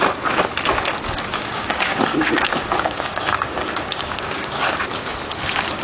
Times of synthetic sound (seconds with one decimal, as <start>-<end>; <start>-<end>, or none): 1.4-4.6